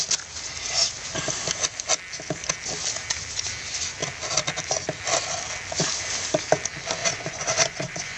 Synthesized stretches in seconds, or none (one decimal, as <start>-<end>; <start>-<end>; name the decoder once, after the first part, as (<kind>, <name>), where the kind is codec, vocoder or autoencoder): 7.0-8.2 (vocoder, Vocos)